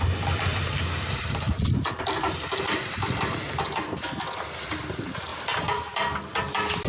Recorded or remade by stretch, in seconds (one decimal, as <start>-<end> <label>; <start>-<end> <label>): 0.0-6.9 recorded